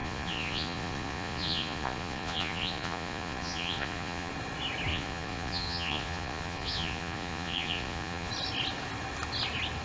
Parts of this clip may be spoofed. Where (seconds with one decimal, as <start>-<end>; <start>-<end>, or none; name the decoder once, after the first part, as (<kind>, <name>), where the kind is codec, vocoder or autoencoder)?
0.0-4.3 (vocoder, Vocos); 4.9-8.3